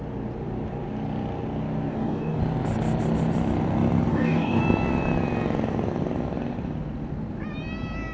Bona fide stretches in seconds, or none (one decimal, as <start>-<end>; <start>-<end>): 0.0-1.9; 2.4-4.1; 4.6-8.1

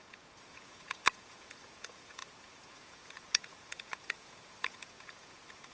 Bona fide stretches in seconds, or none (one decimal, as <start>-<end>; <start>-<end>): none

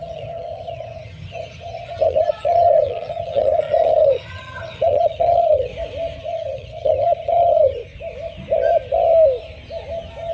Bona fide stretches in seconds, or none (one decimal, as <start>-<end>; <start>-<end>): 5.7-6.2; 7.8-10.3

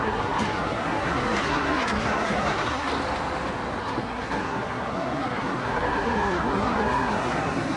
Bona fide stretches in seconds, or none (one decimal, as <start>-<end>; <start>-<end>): 2.9-3.8